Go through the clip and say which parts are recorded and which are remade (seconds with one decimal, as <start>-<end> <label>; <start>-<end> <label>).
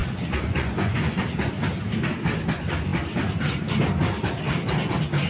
0.0-1.2 remade; 1.2-5.3 recorded